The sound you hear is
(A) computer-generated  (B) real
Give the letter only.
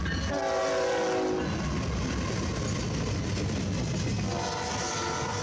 B